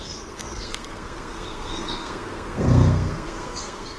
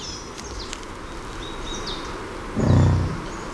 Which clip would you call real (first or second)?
second